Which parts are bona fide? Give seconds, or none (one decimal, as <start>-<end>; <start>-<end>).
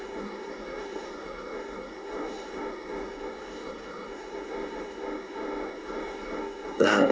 none